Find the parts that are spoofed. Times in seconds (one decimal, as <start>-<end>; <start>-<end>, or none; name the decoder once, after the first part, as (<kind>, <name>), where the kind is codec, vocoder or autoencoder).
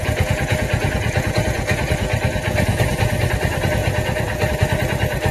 0.0-3.2 (vocoder, Vocos); 3.8-4.5